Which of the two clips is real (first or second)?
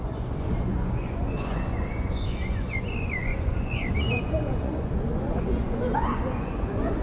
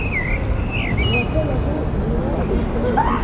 second